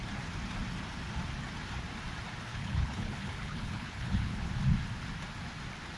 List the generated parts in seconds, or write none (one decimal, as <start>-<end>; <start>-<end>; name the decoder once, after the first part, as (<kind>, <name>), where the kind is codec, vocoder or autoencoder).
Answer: 2.5-4.5 (codec, HILCodec)